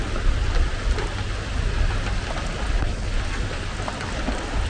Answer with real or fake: real